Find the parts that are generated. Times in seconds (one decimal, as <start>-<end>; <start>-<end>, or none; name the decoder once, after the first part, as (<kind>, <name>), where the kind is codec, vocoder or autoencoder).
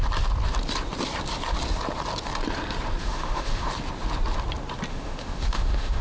3.0-3.7 (autoencoder, DAC-VAE); 4.9-6.0